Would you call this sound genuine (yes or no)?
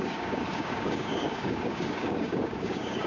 no